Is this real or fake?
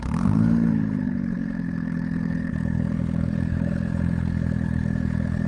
fake